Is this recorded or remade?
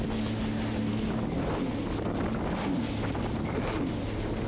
recorded